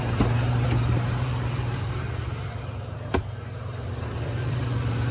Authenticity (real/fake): fake